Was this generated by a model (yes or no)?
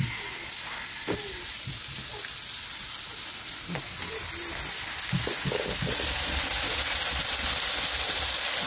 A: no